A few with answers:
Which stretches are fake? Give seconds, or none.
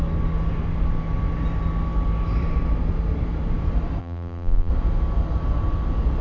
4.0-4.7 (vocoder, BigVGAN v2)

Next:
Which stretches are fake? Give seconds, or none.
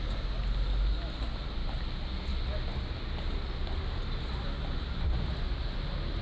none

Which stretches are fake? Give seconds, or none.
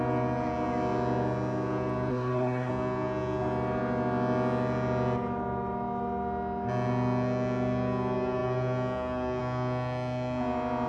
2.1-2.7 (codec, SNAC)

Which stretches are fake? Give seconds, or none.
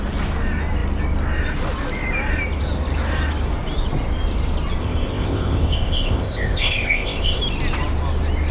4.8-7.4 (codec, ZipCodec)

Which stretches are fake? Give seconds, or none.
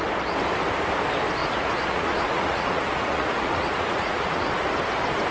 1.4-4.5 (vocoder, Vocos)